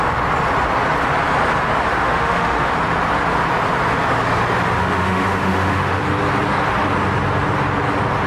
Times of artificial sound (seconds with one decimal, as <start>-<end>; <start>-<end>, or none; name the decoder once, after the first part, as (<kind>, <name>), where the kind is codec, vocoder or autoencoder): 1.9-2.7 (autoencoder, DAC-VAE); 4.8-6.0